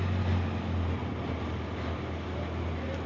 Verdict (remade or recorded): recorded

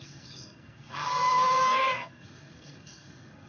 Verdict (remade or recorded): remade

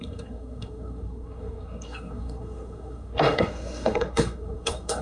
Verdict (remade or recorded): remade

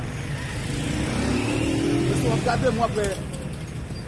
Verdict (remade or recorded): recorded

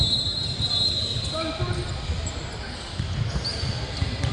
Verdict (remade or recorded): recorded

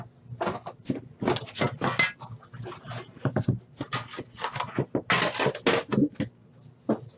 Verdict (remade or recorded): recorded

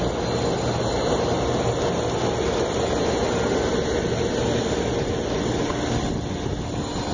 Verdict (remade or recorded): recorded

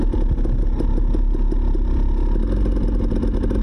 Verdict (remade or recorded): recorded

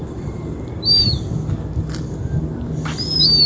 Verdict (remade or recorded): recorded